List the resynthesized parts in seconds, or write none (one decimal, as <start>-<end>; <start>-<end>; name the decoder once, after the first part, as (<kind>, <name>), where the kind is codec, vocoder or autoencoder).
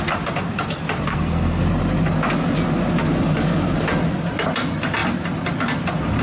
1.1-1.6 (codec, SNAC)